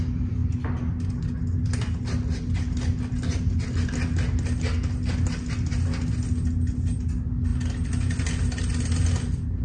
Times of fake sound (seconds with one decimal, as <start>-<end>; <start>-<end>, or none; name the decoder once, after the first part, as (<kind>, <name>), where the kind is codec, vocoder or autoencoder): none